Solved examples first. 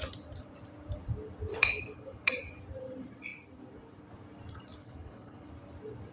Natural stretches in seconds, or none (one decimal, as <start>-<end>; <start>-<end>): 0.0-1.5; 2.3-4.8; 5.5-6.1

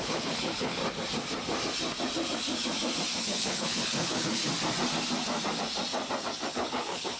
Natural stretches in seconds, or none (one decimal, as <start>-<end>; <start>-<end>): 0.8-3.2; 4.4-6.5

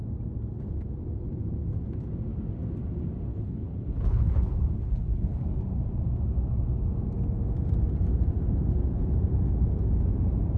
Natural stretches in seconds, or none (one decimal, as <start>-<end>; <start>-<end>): 0.0-3.3; 5.4-10.6

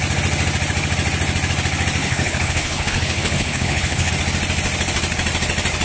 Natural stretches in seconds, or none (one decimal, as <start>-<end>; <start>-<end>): 0.0-2.0; 4.1-5.8

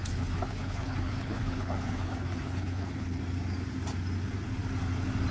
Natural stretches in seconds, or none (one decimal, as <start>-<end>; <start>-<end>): 3.2-5.3

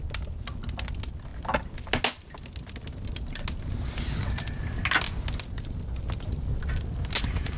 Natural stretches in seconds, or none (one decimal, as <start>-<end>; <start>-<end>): 0.0-7.6